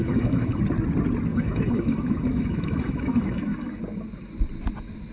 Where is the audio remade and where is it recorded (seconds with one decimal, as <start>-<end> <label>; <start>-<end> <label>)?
0.0-0.6 remade; 0.6-1.3 recorded; 1.3-3.8 remade; 3.8-5.1 recorded